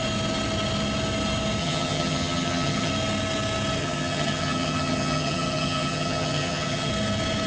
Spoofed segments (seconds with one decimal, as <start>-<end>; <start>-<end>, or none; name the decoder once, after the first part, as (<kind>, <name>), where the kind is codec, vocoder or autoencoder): 1.6-2.9 (vocoder, HiFi-GAN); 3.8-6.9